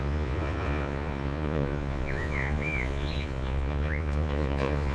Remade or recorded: remade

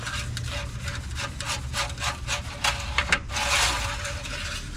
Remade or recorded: recorded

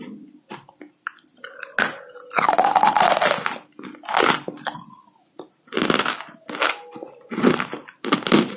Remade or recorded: recorded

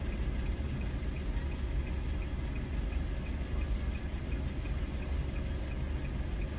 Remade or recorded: recorded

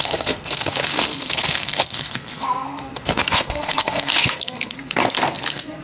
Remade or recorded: remade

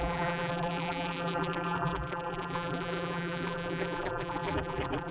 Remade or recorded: remade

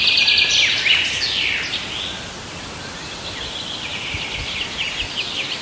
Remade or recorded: recorded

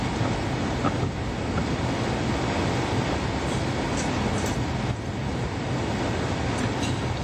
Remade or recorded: recorded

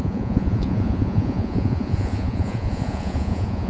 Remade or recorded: remade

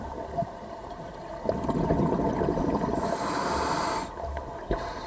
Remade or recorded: recorded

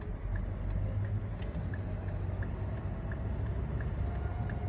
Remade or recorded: recorded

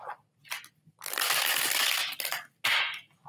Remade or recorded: recorded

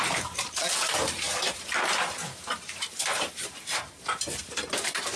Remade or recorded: remade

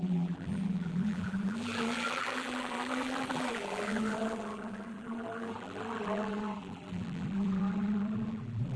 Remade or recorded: remade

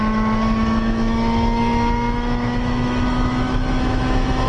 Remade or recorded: remade